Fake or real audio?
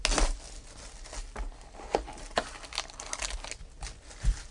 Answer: real